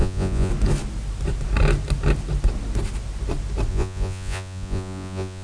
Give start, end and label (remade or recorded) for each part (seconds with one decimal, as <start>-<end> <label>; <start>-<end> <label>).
0.0-0.5 remade; 0.5-3.7 recorded; 3.7-5.4 remade